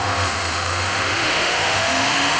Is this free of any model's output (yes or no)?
no